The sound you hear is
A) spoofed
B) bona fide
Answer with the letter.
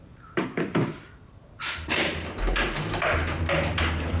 A